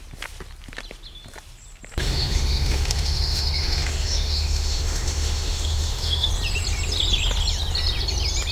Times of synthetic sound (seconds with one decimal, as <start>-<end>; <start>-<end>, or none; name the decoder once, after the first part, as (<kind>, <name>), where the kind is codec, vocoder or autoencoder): 2.0-6.3 (autoencoder, DAC-VAE)